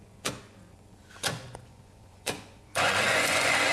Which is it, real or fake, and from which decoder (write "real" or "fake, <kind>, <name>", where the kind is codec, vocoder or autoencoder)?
fake, vocoder, Vocos